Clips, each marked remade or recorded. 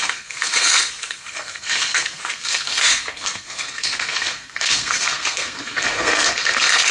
remade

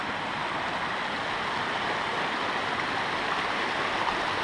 recorded